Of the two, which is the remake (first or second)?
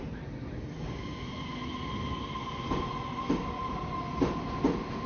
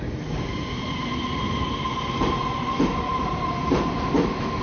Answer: second